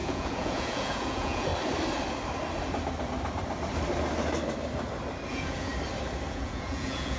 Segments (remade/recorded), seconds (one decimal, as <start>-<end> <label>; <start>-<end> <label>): 0.0-1.5 remade; 1.5-5.3 recorded; 5.3-5.7 remade; 5.7-6.3 recorded; 6.3-7.2 remade